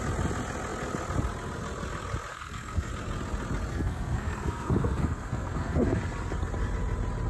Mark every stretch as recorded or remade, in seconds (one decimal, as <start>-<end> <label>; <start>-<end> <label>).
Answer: 0.0-2.3 recorded; 2.3-2.9 remade; 2.9-3.7 recorded; 3.7-6.0 remade; 6.0-7.3 recorded